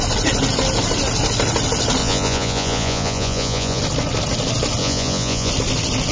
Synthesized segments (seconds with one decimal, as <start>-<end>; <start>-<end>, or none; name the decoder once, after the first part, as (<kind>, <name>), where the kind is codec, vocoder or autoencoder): 2.0-3.8 (vocoder, Vocos); 4.8-5.5